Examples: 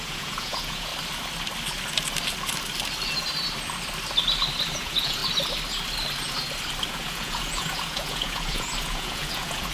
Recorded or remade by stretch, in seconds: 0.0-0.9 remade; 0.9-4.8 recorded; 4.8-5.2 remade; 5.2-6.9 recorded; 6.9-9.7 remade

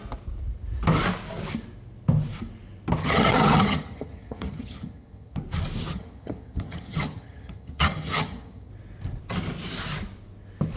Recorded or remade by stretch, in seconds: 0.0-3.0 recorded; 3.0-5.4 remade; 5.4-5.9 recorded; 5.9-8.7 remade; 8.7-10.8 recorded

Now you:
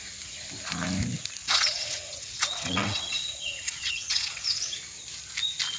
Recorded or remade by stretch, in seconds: 0.0-1.4 recorded; 1.4-4.8 remade; 4.8-5.8 recorded

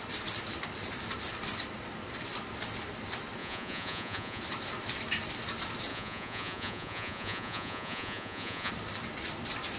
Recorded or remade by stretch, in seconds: 0.0-3.4 recorded; 3.4-4.4 remade; 4.4-5.9 recorded; 5.9-8.7 remade; 8.7-9.8 recorded

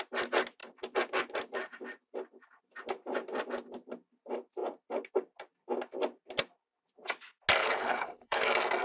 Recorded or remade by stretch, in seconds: 0.0-7.6 recorded; 7.6-8.4 remade; 8.4-8.8 recorded

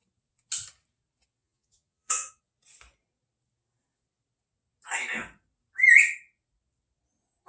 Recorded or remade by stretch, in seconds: 0.0-1.4 recorded; 1.4-2.4 remade; 2.4-7.5 recorded